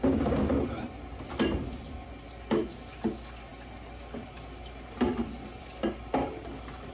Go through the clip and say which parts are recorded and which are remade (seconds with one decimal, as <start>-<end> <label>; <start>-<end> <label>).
0.0-6.9 recorded